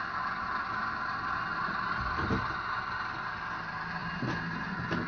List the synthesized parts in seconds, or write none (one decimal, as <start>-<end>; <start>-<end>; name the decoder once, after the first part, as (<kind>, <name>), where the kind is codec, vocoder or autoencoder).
none